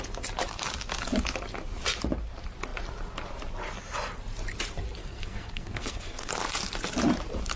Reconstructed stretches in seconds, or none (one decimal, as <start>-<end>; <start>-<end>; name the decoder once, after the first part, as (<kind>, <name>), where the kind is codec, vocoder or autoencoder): 5.0-6.3 (codec, SNAC)

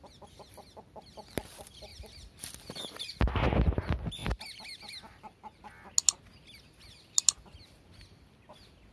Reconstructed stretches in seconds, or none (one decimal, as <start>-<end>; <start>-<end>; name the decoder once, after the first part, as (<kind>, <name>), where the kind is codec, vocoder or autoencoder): none

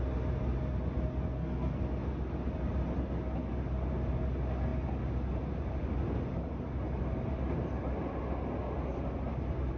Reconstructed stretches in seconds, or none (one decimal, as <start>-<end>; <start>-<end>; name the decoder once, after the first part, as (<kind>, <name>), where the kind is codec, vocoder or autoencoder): 1.3-1.8 (codec, SNAC)

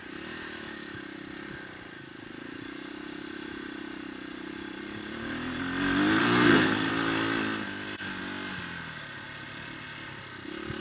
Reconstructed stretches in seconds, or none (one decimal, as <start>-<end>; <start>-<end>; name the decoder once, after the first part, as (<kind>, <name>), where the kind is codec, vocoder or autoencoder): 6.2-6.9 (codec, SNAC)

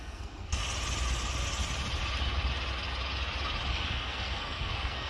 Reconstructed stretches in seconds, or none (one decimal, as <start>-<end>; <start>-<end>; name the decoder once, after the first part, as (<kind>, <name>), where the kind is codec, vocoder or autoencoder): 0.0-0.6 (codec, SNAC); 3.7-5.1

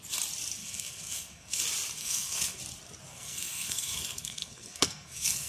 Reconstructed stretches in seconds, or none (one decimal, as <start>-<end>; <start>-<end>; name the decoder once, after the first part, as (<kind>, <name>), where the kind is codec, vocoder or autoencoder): 0.6-1.6 (codec, SNAC); 2.0-2.6; 3.1-5.5

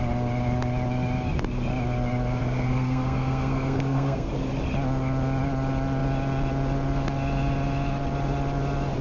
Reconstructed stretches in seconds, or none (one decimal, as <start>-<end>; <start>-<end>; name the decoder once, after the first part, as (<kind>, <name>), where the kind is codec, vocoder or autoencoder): 2.4-4.3 (codec, SNAC)